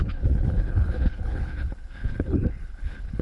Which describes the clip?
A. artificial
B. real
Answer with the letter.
A